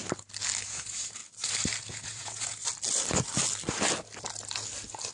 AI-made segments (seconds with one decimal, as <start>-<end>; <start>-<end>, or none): 0.7-1.2; 1.8-2.6